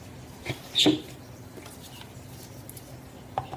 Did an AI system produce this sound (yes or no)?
no